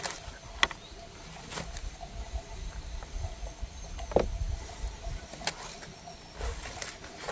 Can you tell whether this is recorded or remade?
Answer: recorded